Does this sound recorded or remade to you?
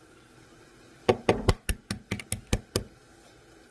recorded